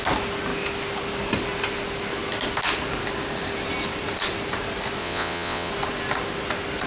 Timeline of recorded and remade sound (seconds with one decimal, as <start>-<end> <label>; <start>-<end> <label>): 0.0-5.0 recorded; 5.0-5.7 remade; 5.7-6.9 recorded